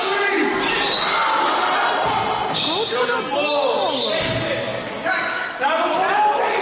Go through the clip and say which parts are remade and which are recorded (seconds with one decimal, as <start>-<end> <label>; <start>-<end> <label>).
0.0-6.6 recorded